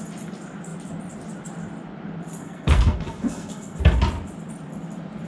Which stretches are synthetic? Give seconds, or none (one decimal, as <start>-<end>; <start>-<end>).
2.4-3.8